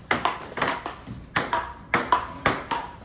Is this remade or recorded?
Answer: recorded